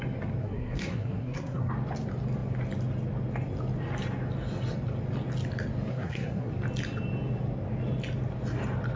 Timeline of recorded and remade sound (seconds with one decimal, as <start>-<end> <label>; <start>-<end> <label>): 0.0-0.4 recorded; 0.4-1.7 remade; 1.7-5.9 recorded; 5.9-6.5 remade; 6.5-9.0 recorded